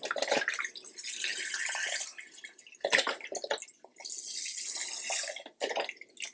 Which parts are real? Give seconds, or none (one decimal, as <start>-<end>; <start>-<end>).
0.0-6.3